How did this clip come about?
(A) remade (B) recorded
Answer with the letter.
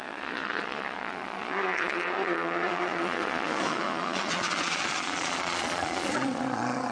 A